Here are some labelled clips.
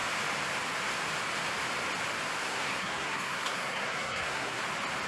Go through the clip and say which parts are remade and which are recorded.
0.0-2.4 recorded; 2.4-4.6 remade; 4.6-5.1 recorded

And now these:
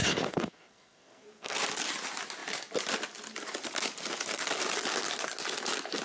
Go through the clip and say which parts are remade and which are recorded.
0.0-1.6 remade; 1.6-6.0 recorded

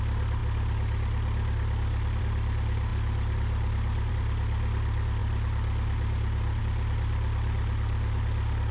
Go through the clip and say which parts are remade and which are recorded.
0.0-8.7 recorded

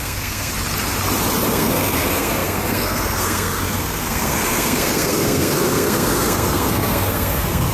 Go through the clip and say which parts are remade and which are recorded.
0.0-0.5 remade; 0.5-1.5 recorded; 1.5-7.7 remade

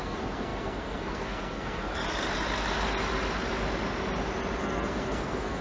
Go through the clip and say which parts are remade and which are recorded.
0.0-2.0 remade; 2.0-4.6 recorded; 4.6-5.6 remade

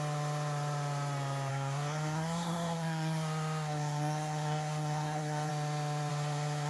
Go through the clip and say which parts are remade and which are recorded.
0.0-1.5 recorded; 1.5-5.5 remade; 5.5-6.1 recorded; 6.1-6.7 remade